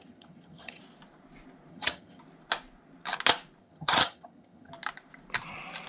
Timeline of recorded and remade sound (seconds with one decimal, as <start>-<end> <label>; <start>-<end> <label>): 0.0-0.8 remade; 0.8-1.7 recorded; 1.7-2.2 remade; 2.2-3.6 recorded; 3.6-4.7 remade; 4.7-5.9 recorded